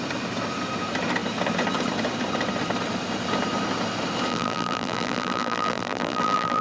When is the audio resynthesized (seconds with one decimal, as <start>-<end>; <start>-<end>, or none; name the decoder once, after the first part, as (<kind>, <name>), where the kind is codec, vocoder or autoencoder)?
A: 4.3-6.6 (vocoder, BigVGAN v2)